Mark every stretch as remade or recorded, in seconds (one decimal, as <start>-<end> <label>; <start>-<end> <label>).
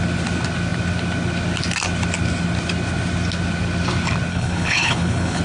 0.0-4.3 recorded; 4.3-5.4 remade